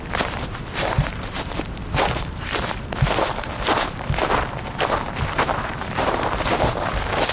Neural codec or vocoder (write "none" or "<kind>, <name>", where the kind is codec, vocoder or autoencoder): vocoder, BigVGAN v2